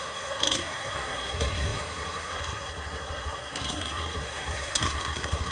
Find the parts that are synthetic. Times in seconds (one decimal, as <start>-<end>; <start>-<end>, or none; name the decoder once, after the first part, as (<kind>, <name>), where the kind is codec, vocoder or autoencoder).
0.0-5.5 (codec, SNAC)